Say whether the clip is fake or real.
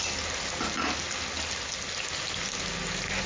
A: real